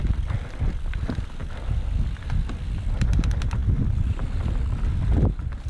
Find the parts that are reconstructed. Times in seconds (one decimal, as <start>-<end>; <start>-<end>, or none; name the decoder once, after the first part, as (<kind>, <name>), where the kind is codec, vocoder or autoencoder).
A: none